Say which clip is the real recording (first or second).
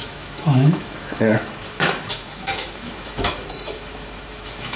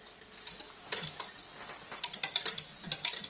second